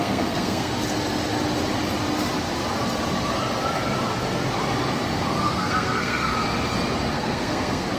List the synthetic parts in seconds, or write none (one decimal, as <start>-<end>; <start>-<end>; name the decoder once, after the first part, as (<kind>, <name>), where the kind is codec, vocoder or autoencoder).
0.0-0.7 (codec, SNAC); 5.4-6.3; 7.1-8.0